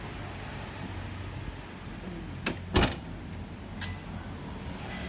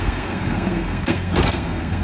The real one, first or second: first